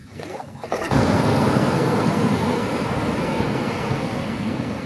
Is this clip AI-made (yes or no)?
yes